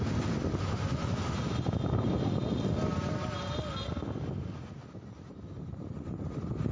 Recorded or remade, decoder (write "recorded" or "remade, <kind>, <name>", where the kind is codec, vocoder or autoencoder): recorded